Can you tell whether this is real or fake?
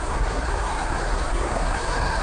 fake